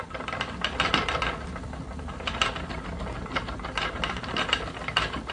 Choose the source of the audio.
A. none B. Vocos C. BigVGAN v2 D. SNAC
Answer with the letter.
A